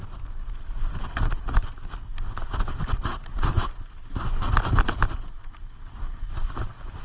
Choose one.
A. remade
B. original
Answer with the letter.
B